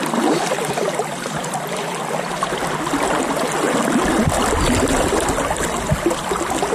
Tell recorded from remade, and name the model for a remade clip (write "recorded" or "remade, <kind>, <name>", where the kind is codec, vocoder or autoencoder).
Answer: recorded